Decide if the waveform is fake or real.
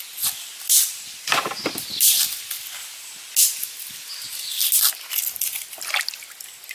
real